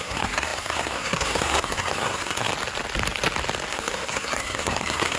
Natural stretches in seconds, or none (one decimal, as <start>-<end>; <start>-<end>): 2.5-3.7